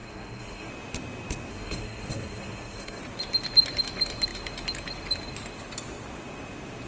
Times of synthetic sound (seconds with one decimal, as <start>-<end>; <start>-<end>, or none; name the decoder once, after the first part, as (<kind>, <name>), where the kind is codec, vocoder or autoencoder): 0.0-0.7 (codec, SNAC); 1.5-3.0